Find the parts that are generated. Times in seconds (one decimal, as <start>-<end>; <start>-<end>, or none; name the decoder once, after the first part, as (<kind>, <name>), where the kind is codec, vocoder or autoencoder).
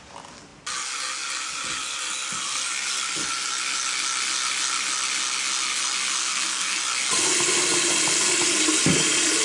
6.2-6.8 (codec, SNAC)